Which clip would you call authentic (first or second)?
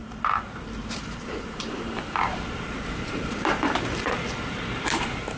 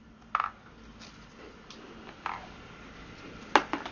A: second